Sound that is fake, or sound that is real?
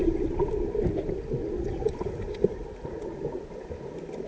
real